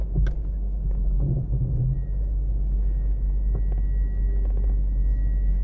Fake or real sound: real